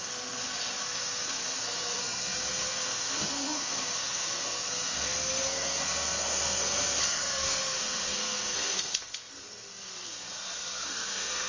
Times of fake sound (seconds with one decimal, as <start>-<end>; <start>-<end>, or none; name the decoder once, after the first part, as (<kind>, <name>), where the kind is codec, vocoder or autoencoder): 0.0-11.5 (codec, SNAC)